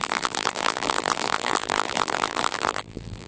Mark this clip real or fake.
fake